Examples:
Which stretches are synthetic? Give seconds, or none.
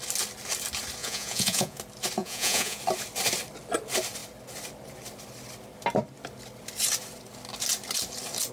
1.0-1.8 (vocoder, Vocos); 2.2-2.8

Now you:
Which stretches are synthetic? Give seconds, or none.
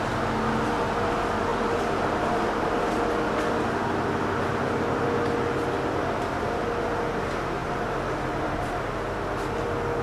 1.5-2.6 (vocoder, BigVGAN v2); 7.6-8.9